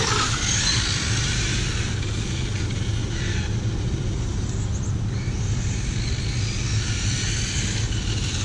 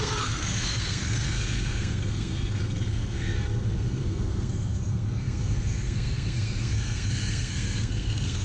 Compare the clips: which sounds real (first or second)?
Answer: first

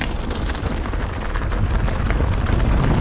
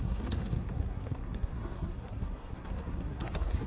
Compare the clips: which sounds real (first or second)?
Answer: first